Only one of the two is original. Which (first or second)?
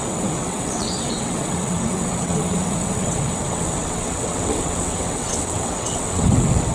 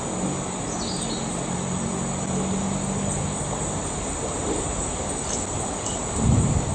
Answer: second